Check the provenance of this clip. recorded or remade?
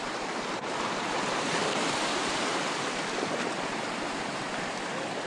remade